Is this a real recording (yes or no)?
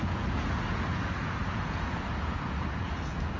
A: no